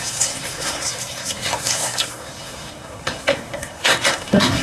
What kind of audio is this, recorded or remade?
remade